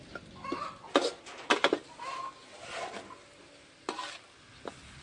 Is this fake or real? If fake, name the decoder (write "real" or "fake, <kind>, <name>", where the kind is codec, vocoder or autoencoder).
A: real